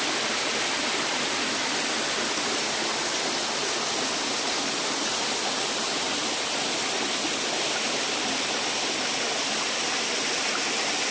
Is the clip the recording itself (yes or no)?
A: yes